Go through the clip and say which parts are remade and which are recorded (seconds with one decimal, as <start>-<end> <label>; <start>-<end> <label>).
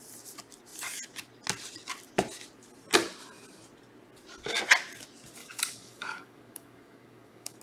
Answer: 0.0-5.4 recorded; 5.4-7.6 remade